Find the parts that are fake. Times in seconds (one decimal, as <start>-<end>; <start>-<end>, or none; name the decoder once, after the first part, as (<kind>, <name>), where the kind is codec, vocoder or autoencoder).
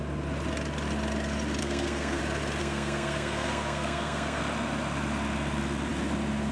1.6-2.2 (codec, SNAC); 2.6-4.4